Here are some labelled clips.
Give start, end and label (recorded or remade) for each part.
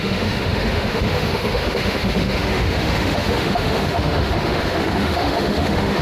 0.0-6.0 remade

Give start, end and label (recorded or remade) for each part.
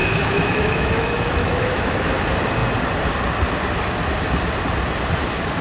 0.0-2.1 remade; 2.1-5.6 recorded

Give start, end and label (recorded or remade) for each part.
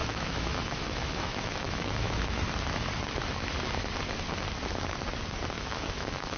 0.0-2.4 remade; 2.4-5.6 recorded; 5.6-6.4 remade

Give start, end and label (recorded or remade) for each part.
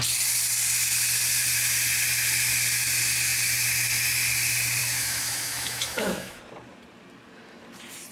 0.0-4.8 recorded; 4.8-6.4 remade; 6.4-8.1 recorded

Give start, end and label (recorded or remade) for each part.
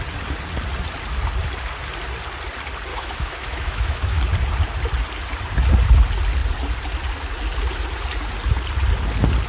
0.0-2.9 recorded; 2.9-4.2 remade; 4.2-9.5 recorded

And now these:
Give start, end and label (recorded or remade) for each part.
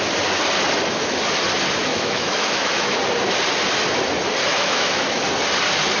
0.0-1.9 recorded; 1.9-3.0 remade; 3.0-4.5 recorded; 4.5-5.2 remade; 5.2-6.0 recorded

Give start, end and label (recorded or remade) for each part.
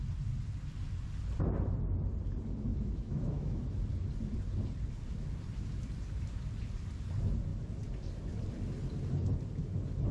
0.0-2.7 recorded; 2.7-3.6 remade; 3.6-10.1 recorded